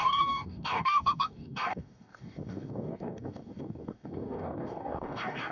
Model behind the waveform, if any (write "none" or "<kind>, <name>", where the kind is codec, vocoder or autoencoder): codec, DAC